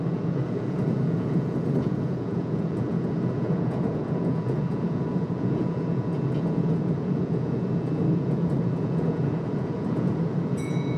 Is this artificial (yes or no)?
yes